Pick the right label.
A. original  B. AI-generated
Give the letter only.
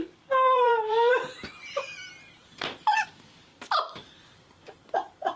B